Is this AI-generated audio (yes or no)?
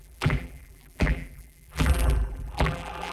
yes